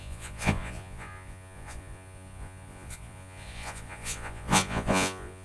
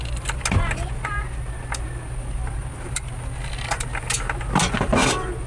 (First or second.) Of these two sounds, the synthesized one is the first